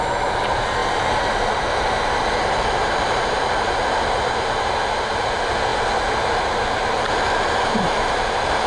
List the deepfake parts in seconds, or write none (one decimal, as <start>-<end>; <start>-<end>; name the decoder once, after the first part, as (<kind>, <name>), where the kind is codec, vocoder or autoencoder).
0.0-5.7 (vocoder, BigVGAN v2); 6.3-8.7